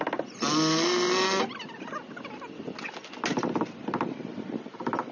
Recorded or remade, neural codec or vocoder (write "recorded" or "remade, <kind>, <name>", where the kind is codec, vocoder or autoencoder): recorded